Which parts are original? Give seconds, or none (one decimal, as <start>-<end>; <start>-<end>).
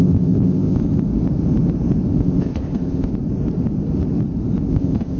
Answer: 0.8-2.2; 3.1-4.7